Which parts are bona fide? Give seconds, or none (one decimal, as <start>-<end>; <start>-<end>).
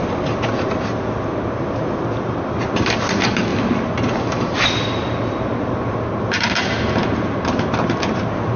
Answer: 0.0-8.6